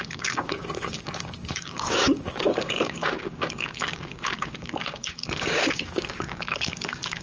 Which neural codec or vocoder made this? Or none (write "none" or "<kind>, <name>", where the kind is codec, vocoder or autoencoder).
codec, DAC